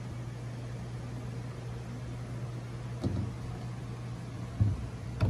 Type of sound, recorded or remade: recorded